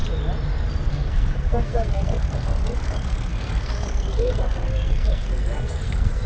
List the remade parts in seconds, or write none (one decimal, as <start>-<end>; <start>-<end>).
0.9-6.3